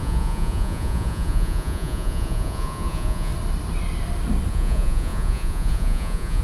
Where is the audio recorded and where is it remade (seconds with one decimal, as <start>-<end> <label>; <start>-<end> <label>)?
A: 0.0-3.3 remade; 3.3-4.5 recorded; 4.5-6.4 remade